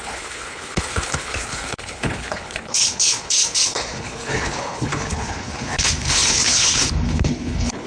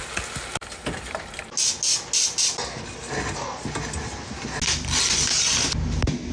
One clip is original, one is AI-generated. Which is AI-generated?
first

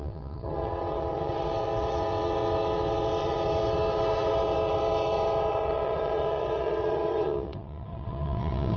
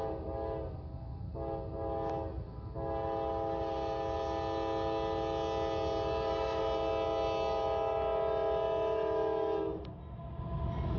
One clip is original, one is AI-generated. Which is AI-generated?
first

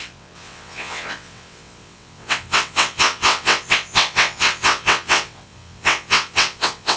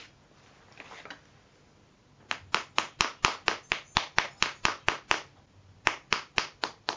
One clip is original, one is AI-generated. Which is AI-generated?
first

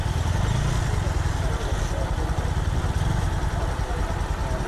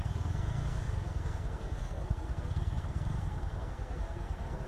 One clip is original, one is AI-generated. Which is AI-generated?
second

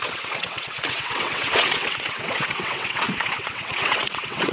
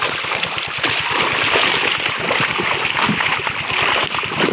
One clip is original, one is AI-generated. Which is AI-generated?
first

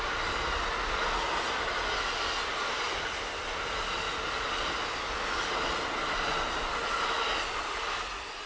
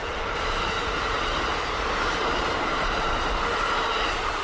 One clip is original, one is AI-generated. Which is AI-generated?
second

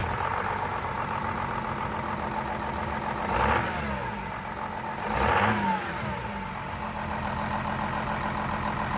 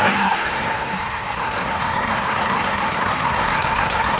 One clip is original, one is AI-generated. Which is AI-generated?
second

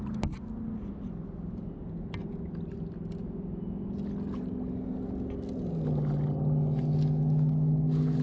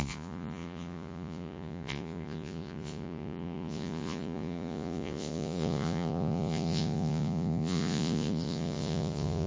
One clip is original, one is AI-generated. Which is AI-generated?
second